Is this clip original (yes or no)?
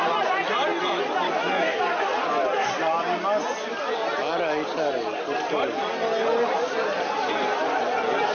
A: yes